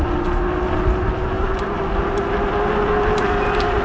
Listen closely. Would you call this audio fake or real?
real